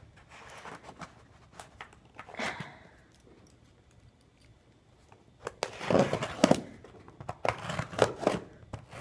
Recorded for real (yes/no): yes